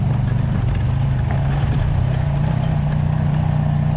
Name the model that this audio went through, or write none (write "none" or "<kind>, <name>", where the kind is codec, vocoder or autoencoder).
none